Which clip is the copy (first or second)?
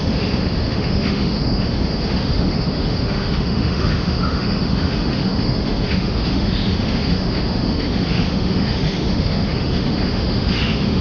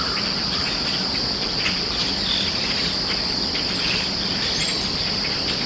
first